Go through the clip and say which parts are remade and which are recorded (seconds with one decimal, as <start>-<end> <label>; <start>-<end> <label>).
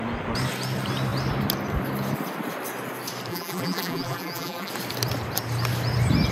0.0-3.3 recorded; 3.3-4.7 remade; 4.7-6.3 recorded